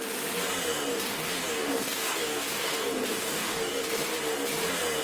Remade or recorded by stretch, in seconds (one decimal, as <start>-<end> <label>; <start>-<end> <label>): 0.0-0.9 recorded; 0.9-3.9 remade; 3.9-5.0 recorded